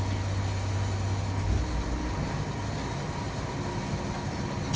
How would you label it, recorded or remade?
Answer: recorded